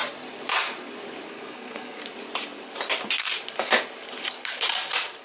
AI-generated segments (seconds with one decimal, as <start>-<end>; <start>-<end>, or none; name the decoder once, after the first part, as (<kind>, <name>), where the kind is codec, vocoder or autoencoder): 1.3-2.0 (codec, SNAC)